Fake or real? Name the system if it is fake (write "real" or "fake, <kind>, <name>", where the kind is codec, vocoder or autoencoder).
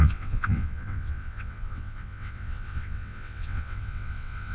fake, vocoder, WaveNeXt